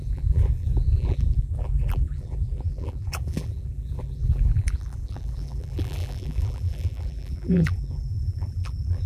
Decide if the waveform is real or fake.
fake